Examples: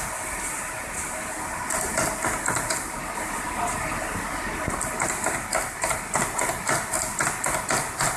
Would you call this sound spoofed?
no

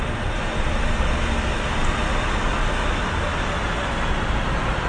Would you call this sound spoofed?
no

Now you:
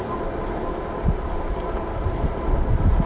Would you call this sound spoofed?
no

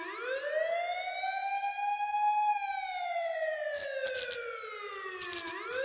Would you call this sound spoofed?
no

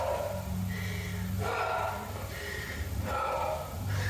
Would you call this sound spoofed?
no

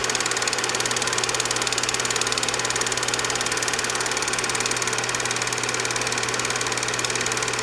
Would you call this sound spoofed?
no